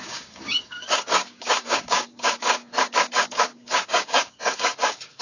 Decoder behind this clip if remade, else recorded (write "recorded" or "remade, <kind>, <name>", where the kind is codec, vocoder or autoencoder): remade, codec, DAC